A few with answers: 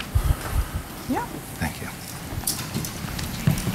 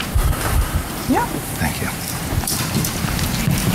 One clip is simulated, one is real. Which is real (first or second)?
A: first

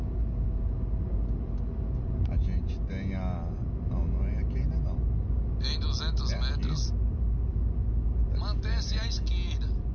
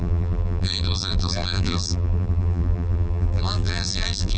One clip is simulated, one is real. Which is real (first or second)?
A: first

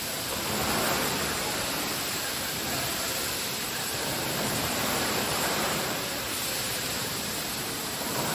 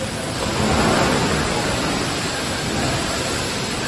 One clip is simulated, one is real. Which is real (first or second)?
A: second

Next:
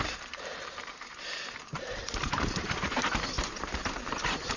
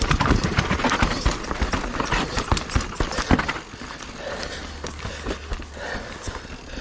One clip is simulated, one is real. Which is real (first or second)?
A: second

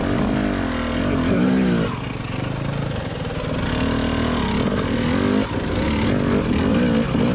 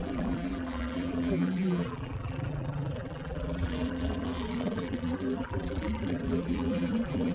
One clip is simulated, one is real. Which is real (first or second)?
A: first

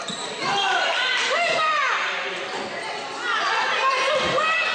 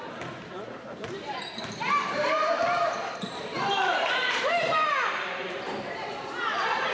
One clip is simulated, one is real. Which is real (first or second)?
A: first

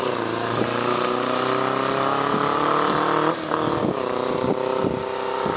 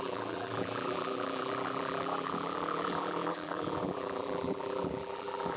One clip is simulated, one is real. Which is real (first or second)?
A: first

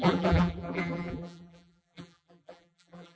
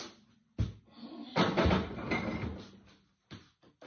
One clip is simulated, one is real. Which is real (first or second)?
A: second